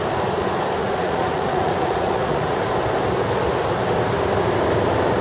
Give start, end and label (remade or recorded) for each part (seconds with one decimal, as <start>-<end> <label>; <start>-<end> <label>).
0.0-0.8 recorded; 0.8-2.6 remade; 2.6-5.2 recorded